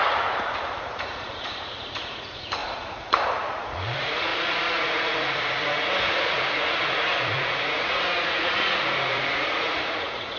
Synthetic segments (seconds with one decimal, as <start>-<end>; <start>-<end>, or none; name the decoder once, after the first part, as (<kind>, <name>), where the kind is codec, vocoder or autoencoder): 0.0-10.4 (vocoder, Vocos)